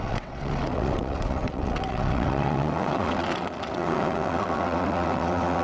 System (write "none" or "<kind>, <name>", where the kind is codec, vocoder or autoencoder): vocoder, WaveNeXt